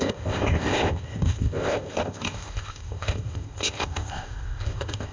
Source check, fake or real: fake